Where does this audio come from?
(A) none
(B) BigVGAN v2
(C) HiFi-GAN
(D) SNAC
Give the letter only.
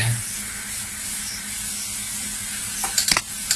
A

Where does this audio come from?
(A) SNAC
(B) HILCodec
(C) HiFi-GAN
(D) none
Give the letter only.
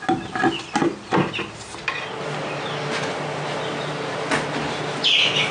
D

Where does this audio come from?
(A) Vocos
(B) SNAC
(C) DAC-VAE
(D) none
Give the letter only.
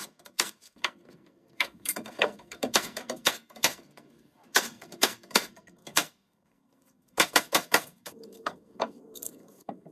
B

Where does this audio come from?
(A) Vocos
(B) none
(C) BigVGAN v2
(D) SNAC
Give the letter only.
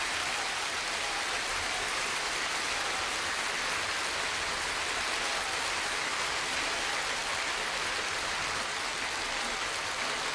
B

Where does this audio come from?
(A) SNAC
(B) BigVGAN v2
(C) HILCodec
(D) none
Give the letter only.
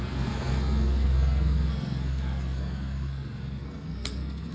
A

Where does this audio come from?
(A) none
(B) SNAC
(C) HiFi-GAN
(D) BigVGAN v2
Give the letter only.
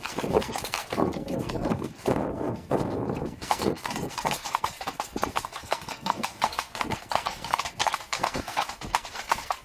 B